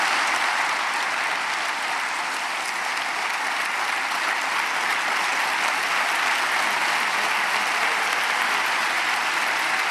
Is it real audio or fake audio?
real